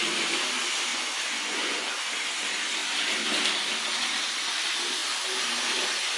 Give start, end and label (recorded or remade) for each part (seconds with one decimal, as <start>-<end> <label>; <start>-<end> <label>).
0.0-0.9 recorded; 0.9-1.8 remade; 1.8-6.2 recorded